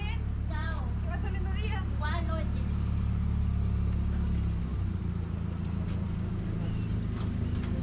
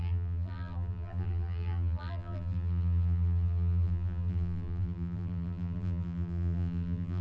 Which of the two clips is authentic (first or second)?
first